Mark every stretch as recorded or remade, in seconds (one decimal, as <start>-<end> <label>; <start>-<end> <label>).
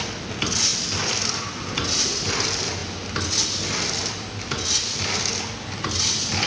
0.0-6.5 recorded